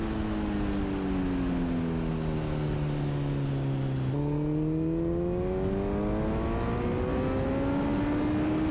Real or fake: real